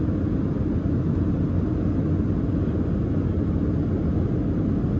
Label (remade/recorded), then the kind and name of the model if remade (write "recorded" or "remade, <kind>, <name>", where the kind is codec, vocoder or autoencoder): recorded